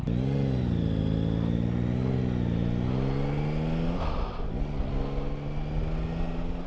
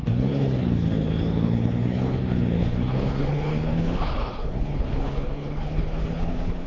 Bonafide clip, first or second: first